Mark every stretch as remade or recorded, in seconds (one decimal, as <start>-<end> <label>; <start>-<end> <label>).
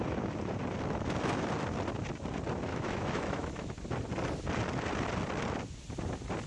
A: 0.0-2.7 recorded; 2.7-3.7 remade; 3.7-6.5 recorded